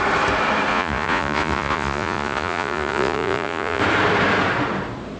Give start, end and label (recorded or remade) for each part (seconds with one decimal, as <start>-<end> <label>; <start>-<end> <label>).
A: 0.0-0.7 recorded; 0.7-3.8 remade; 3.8-5.2 recorded